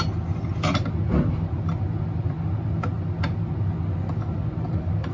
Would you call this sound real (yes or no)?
yes